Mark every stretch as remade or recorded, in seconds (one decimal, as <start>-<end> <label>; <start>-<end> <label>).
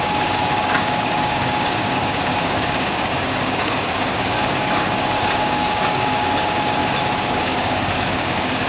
0.0-6.8 remade; 6.8-7.3 recorded; 7.3-8.7 remade